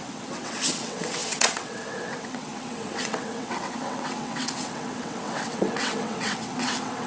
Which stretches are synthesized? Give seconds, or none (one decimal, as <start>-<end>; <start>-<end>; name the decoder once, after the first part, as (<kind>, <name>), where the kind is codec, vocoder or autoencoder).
0.0-7.1 (vocoder, WaveNeXt)